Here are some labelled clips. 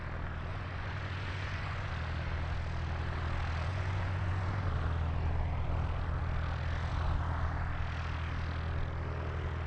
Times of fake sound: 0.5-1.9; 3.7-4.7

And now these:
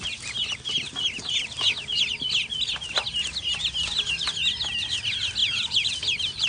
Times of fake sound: 5.4-6.5